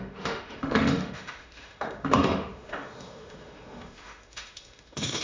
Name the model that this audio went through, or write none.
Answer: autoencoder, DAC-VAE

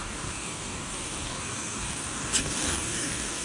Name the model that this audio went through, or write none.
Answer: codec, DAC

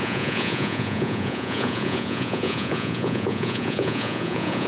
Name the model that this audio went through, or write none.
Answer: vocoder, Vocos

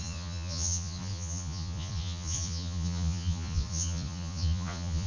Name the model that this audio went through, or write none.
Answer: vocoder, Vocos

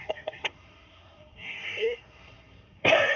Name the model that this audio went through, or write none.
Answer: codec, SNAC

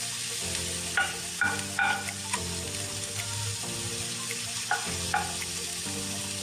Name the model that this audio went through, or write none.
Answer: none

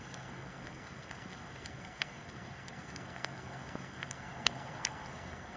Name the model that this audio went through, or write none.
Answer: codec, SNAC